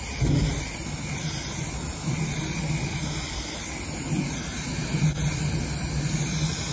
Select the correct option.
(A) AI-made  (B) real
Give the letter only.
B